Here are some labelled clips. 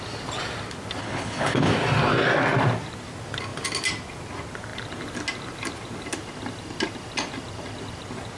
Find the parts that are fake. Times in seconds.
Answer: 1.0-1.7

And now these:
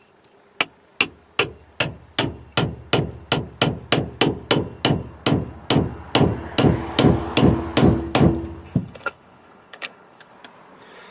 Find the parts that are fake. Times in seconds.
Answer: 8.8-10.3

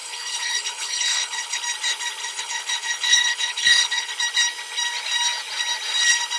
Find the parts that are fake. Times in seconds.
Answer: 0.0-1.6; 2.2-4.1

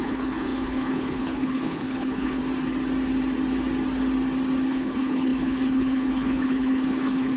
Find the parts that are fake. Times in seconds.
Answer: 0.0-2.4; 4.7-7.4

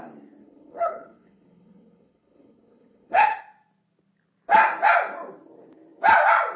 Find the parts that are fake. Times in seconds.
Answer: 0.4-3.4

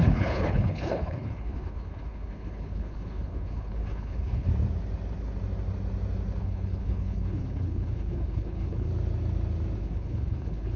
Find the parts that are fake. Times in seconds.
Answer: 0.0-4.5; 6.4-8.9; 9.8-10.8

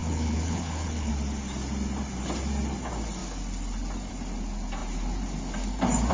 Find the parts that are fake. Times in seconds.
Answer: 0.0-1.1